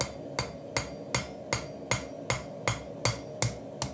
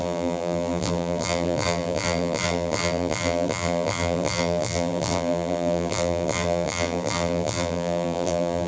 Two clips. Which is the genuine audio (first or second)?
first